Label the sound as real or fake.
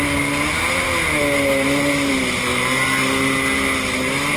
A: real